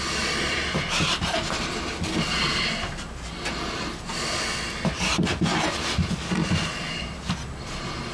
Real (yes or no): yes